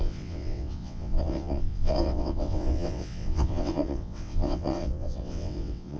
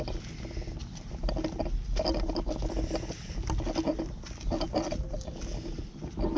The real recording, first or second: second